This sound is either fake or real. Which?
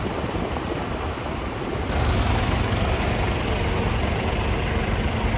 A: real